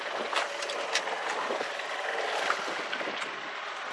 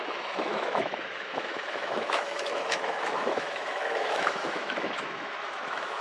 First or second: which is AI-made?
second